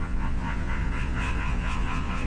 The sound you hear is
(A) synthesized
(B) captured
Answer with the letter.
A